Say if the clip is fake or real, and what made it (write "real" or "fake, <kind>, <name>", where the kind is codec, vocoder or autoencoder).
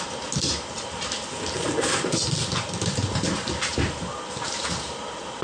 real